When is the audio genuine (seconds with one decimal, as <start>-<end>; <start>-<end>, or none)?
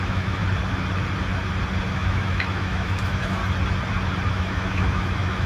0.4-1.9; 3.4-4.3